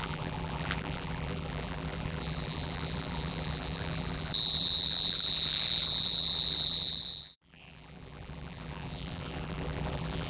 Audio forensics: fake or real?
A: fake